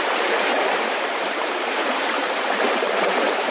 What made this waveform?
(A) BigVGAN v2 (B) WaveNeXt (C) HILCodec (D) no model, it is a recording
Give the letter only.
A